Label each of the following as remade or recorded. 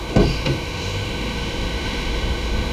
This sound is remade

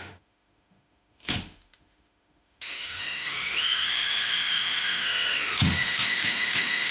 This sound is remade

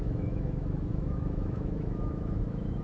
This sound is remade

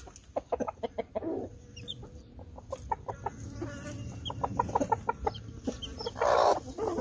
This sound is recorded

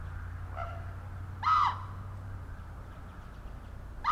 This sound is recorded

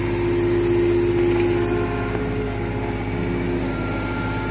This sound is recorded